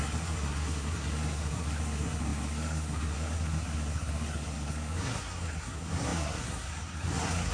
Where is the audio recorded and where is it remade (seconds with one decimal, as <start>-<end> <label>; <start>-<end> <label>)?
0.0-7.5 remade